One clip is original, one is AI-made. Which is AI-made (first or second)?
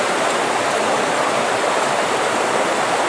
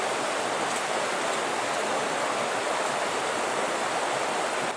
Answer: first